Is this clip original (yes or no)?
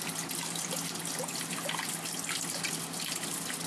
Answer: yes